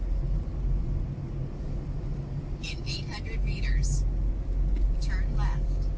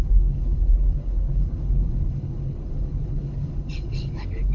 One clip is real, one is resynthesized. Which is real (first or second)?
first